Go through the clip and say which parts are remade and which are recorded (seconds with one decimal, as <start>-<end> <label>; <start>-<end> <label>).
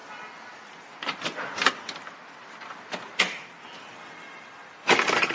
0.0-5.3 recorded